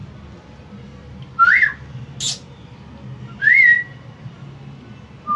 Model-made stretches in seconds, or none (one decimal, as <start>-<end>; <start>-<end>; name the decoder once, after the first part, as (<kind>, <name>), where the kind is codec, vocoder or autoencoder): none